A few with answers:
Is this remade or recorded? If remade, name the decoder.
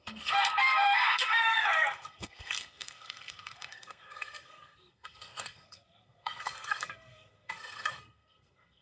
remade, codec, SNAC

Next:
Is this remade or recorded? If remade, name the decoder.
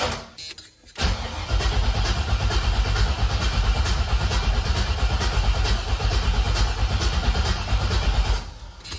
recorded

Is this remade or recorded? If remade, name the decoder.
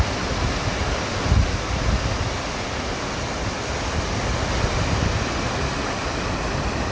recorded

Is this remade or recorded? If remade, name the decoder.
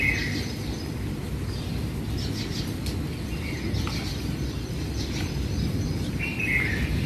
recorded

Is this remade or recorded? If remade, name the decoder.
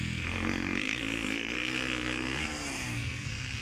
remade, codec, SNAC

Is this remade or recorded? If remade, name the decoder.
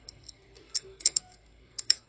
remade, codec, SNAC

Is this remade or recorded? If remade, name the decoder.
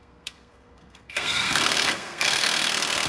remade, codec, SNAC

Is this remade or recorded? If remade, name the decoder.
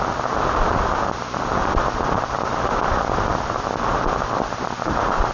recorded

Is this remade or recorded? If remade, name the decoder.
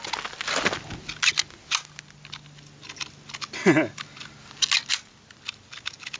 recorded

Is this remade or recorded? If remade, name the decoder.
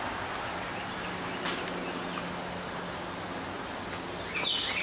recorded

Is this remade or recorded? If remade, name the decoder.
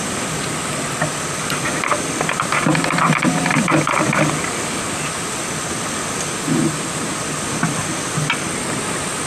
recorded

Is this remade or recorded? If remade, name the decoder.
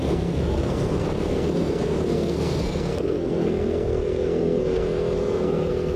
remade, codec, SNAC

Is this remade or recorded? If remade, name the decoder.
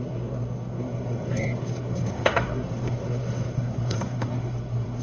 remade, codec, SNAC